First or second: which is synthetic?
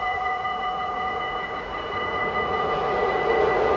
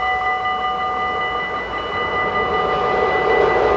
first